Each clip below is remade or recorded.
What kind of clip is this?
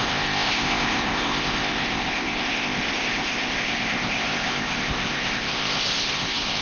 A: remade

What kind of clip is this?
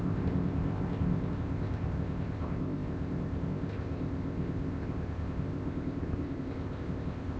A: remade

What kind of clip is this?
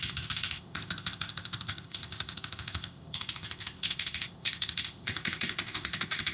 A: remade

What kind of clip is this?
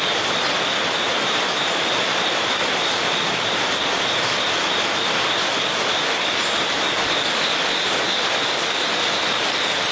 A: recorded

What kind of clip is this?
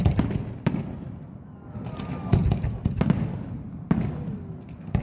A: recorded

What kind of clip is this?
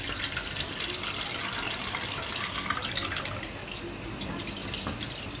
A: recorded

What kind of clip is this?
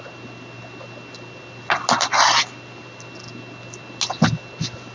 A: recorded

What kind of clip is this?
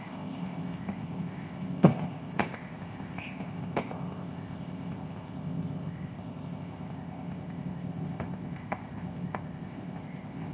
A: remade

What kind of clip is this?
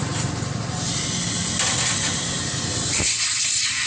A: recorded